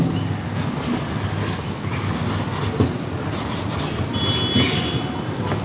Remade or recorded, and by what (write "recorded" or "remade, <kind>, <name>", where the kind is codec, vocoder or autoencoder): recorded